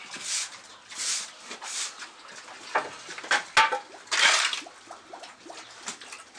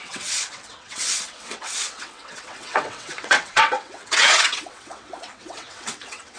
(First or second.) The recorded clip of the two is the first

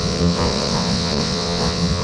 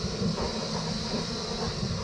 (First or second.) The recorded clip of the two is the second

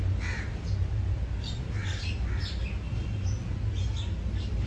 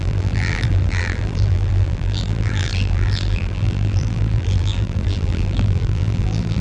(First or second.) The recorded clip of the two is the first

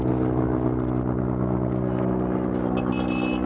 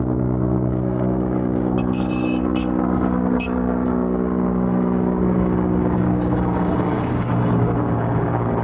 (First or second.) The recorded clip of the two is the first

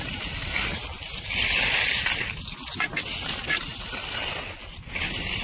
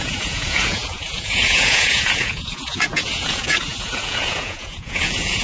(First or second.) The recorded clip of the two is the first